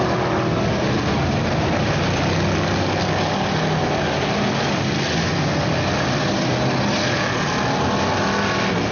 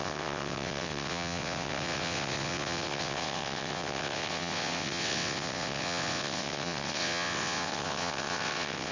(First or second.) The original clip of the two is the first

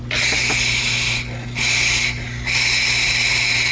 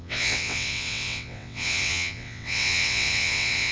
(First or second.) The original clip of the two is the first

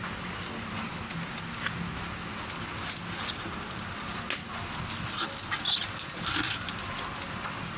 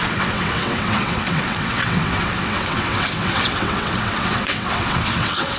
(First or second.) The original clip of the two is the first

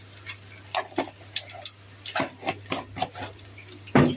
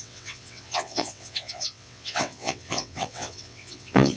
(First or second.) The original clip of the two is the first